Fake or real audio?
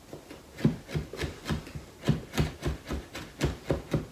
real